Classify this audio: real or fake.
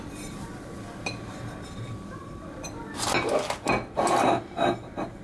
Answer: real